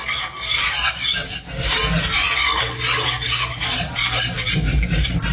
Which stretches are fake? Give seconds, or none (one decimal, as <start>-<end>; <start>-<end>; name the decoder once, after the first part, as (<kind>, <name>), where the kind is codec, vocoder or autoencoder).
0.6-1.1 (vocoder, BigVGAN v2); 3.6-5.3